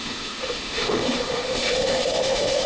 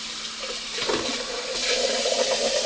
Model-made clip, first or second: first